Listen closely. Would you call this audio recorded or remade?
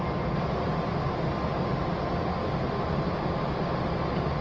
recorded